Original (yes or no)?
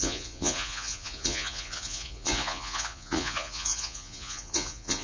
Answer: no